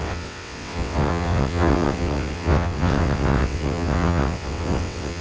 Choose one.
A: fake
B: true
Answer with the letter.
A